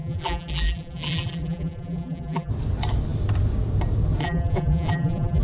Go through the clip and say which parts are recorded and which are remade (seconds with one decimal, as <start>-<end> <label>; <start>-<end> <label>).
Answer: 0.0-2.5 remade; 2.5-4.2 recorded; 4.2-5.4 remade